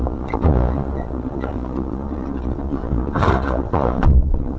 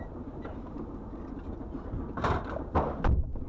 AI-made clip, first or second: first